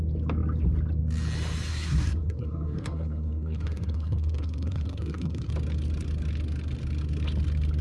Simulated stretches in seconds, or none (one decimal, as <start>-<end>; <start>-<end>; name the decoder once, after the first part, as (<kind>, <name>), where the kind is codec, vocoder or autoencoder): 1.7-5.5 (codec, SNAC)